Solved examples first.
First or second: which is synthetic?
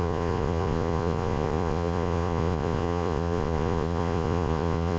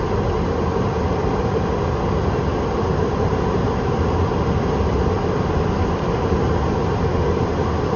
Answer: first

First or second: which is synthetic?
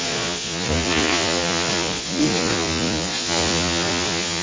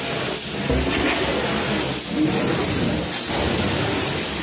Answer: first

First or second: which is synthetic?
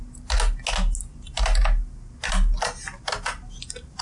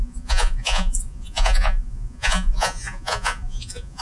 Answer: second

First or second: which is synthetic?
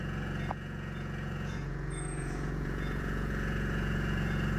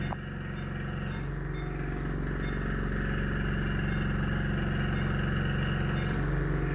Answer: first